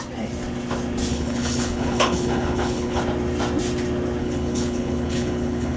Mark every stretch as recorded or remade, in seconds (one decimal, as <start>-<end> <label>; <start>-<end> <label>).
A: 0.0-1.1 recorded; 1.1-3.0 remade; 3.0-4.2 recorded; 4.2-5.8 remade